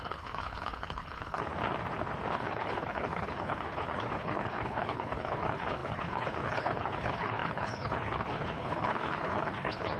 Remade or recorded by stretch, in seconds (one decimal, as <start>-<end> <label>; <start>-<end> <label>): 0.0-1.5 remade; 1.5-2.3 recorded; 2.3-10.0 remade